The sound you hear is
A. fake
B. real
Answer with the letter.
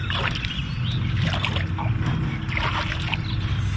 B